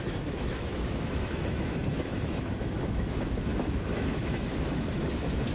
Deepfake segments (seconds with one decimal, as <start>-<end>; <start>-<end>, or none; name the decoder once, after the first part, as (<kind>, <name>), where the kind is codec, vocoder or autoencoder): 0.0-5.5 (autoencoder, DAC-VAE)

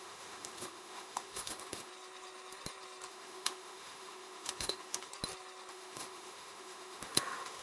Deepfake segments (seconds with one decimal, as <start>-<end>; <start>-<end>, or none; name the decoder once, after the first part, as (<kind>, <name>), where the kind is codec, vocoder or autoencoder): 0.0-1.9 (autoencoder, DAC-VAE); 3.1-5.1; 5.7-7.6

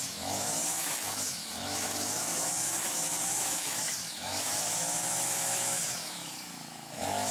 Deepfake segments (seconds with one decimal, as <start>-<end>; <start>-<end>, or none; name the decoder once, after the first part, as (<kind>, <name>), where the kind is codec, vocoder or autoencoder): 0.0-7.3 (autoencoder, DAC-VAE)

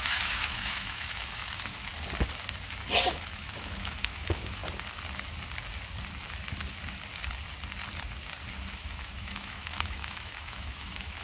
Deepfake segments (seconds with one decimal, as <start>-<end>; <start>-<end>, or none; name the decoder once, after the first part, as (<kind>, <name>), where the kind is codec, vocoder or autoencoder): 0.0-1.9 (autoencoder, DAC-VAE); 3.1-4.6; 8.7-11.2

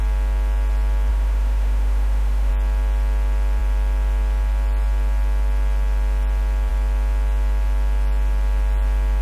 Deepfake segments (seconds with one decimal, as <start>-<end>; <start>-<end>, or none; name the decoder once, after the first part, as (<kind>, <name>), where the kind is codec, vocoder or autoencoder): 1.1-2.5 (autoencoder, DAC-VAE)

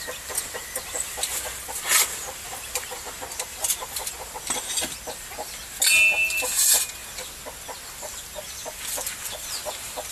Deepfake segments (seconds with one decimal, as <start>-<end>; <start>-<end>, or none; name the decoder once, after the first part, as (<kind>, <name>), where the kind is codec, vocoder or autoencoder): none

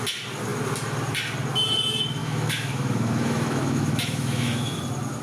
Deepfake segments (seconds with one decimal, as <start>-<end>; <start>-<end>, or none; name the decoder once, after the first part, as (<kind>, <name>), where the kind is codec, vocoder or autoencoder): 2.2-4.8 (autoencoder, DAC-VAE)

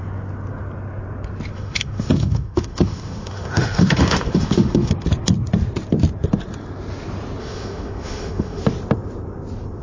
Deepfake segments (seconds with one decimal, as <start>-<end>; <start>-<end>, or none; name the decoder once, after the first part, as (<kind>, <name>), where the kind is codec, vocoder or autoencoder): 1.5-4.9 (autoencoder, DAC-VAE); 7.4-8.6